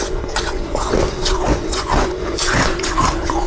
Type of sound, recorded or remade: remade